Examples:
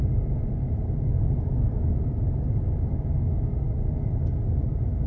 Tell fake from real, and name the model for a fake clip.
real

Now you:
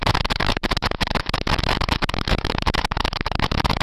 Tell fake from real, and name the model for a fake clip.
fake, autoencoder, DAC-VAE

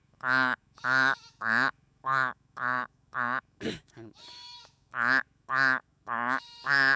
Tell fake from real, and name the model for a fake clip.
fake, autoencoder, DAC-VAE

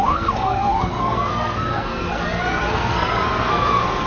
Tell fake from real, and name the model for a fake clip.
fake, codec, SNAC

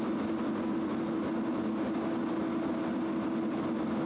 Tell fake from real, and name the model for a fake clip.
real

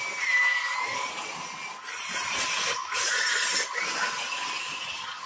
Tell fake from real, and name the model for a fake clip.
real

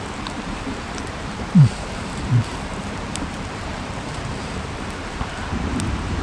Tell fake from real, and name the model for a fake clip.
fake, vocoder, BigVGAN v2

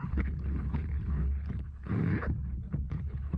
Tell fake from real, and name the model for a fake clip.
fake, codec, HILCodec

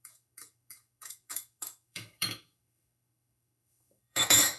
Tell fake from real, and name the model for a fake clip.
fake, autoencoder, DAC-VAE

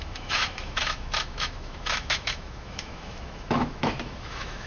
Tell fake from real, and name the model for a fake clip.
fake, autoencoder, DAC-VAE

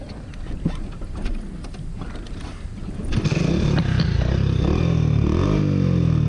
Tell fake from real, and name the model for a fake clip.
real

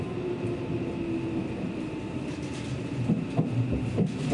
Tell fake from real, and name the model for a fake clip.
real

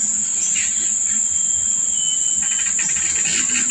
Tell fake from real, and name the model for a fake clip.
real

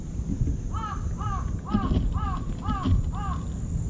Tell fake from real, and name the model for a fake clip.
real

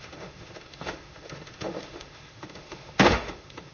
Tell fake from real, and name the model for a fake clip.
fake, autoencoder, DAC-VAE